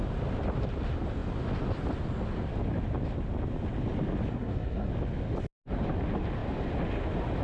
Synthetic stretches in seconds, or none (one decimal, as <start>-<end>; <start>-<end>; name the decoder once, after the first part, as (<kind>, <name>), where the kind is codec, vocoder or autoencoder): 4.3-4.9 (codec, SNAC)